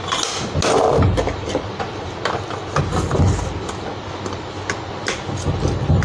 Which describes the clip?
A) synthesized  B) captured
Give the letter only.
B